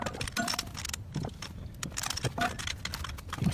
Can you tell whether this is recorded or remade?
recorded